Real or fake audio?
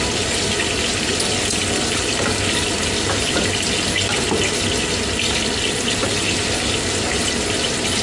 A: real